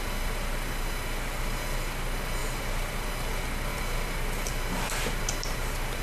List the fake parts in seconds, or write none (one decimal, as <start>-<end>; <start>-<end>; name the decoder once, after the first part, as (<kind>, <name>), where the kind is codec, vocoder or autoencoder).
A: 2.4-3.1 (vocoder, BigVGAN v2); 3.7-6.0